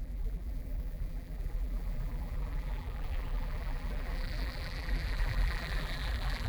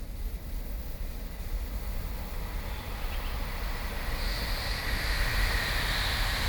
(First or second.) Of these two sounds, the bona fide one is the second